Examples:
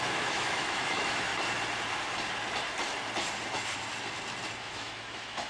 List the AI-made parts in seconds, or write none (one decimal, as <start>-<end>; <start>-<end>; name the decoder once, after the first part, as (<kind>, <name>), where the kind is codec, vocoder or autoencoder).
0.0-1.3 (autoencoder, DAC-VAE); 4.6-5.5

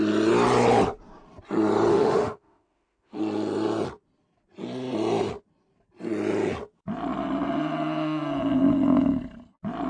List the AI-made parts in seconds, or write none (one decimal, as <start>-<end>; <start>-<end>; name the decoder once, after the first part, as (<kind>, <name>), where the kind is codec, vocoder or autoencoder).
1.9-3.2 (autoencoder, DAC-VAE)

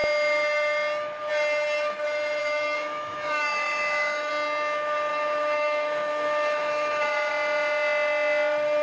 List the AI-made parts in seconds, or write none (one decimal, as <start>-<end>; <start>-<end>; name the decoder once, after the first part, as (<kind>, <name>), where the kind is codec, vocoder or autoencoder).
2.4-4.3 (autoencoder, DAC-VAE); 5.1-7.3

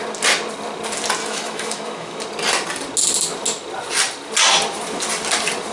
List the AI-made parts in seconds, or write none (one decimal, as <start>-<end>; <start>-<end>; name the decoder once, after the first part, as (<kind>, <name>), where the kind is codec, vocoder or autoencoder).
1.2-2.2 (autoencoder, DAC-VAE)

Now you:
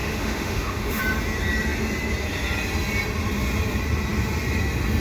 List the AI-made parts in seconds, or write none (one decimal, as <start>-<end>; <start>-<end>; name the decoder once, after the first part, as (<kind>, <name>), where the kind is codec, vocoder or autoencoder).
0.0-1.0 (autoencoder, DAC-VAE)

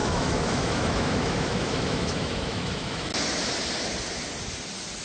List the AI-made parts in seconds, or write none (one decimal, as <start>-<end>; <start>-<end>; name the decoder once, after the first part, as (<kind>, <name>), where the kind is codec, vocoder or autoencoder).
0.0-3.1 (autoencoder, DAC-VAE)